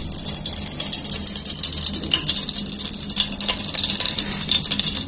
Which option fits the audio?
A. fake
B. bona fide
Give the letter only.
B